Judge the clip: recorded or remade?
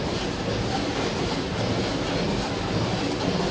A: recorded